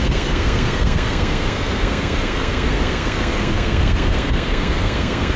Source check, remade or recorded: remade